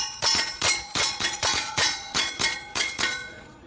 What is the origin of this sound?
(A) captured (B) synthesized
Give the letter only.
B